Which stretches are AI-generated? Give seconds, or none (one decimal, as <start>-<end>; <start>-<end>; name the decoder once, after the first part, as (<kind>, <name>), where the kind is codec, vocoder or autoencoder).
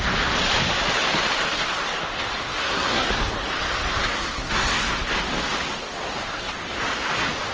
2.6-3.1 (codec, SNAC); 4.0-4.9